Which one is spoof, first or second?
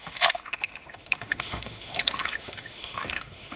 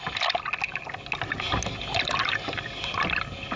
first